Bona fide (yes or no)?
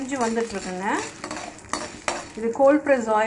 yes